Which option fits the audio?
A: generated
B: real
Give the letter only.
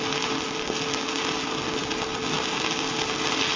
B